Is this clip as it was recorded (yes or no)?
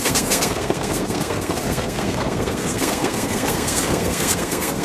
no